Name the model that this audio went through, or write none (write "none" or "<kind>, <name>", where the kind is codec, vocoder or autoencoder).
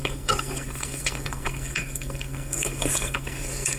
codec, SNAC